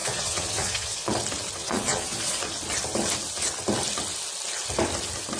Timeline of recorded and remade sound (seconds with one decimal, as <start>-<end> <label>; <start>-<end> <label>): 0.0-1.1 remade; 1.1-1.6 recorded; 1.6-2.6 remade; 2.6-5.4 recorded